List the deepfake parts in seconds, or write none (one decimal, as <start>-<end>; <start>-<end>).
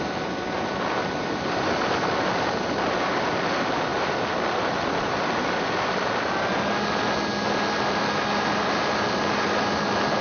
none